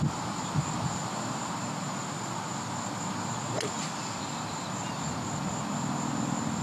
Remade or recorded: recorded